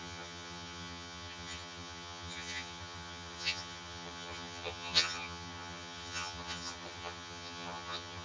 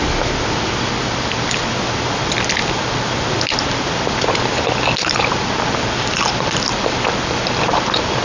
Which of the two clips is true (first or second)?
second